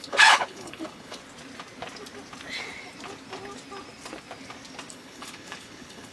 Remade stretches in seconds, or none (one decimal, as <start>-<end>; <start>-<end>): 0.0-1.2; 4.9-6.1